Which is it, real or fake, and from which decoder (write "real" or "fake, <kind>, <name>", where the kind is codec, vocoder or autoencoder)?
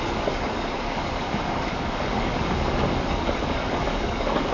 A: fake, codec, DAC